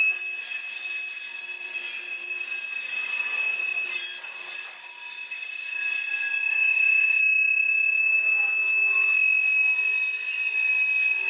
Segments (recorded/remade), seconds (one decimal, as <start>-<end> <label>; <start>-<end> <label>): 0.0-6.5 recorded; 6.5-7.2 remade; 7.2-11.3 recorded